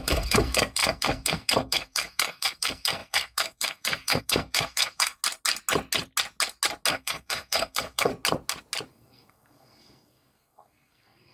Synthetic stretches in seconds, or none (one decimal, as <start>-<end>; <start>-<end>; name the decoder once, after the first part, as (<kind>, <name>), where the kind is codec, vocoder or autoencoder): 0.0-5.2 (codec, SNAC); 6.9-8.1; 8.9-11.3